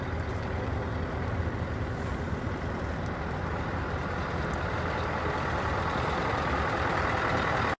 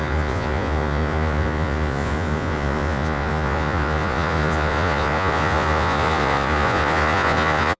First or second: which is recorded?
first